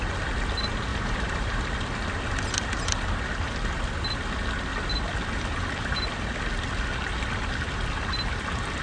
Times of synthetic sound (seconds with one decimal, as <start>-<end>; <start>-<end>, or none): 0.9-1.6